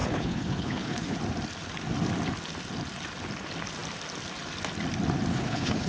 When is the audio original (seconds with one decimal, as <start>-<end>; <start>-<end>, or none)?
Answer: 1.2-5.3